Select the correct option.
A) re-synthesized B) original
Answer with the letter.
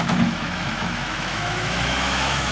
A